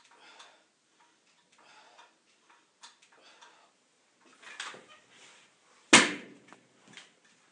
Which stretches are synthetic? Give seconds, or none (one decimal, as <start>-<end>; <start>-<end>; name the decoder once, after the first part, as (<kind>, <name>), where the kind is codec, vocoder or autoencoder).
none